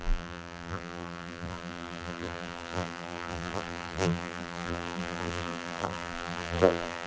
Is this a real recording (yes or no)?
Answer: no